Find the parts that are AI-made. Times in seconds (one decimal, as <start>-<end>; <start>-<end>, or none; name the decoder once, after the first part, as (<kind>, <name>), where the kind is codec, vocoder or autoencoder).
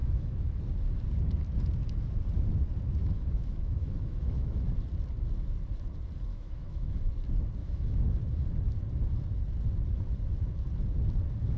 0.0-0.5 (autoencoder, DAC-VAE); 3.0-4.6; 6.3-6.9; 7.6-8.1